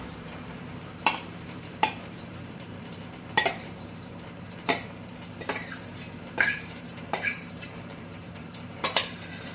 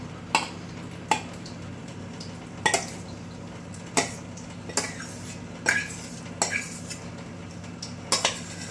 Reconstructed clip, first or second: first